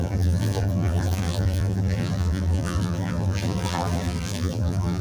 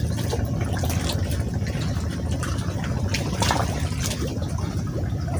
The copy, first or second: first